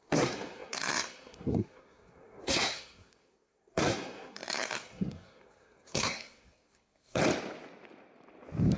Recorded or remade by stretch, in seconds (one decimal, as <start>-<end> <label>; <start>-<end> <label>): 0.0-7.2 remade; 7.2-8.8 recorded

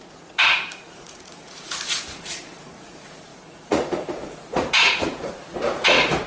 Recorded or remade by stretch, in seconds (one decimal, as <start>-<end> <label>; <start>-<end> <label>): 0.0-6.3 remade